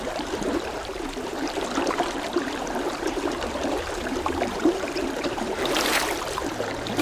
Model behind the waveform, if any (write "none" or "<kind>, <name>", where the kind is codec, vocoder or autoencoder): vocoder, BigVGAN v2